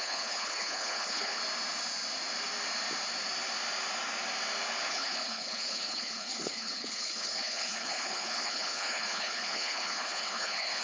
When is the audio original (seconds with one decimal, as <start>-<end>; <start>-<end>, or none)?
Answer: 1.4-4.9